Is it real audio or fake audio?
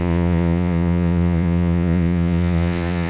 fake